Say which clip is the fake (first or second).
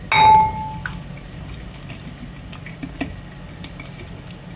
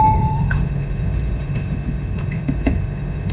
second